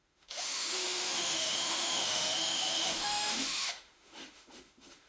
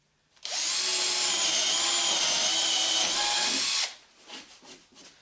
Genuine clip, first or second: second